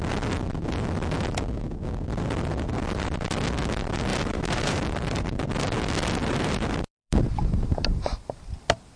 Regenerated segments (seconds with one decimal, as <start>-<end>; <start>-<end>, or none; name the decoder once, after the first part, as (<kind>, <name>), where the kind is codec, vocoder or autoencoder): 4.1-5.4 (vocoder, BigVGAN v2); 6.2-8.5